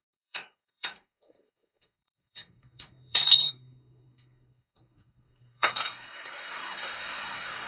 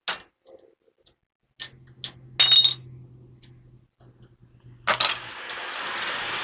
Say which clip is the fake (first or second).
first